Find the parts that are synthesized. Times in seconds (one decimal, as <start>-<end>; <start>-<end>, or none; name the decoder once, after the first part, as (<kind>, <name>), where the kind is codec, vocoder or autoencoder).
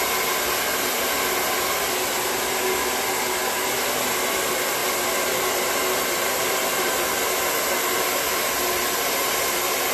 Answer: 4.8-9.9 (vocoder, BigVGAN v2)